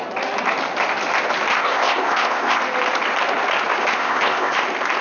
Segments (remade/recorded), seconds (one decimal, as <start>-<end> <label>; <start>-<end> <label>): 0.0-1.5 recorded; 1.5-2.6 remade; 2.6-3.8 recorded; 3.8-4.6 remade; 4.6-5.0 recorded